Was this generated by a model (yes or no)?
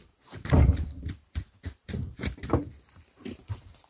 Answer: yes